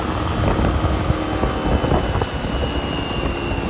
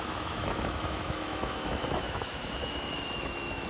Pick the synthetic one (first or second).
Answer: second